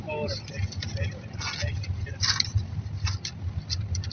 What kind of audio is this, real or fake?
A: real